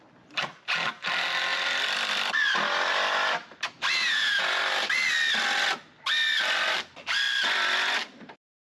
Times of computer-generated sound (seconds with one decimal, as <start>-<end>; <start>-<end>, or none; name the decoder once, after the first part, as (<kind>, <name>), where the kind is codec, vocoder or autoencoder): 4.0-4.6 (vocoder, Vocos)